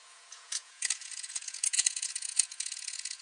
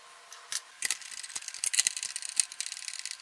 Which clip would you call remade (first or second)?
first